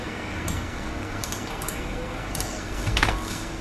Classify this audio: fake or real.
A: fake